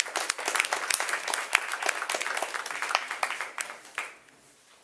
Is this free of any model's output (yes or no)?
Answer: yes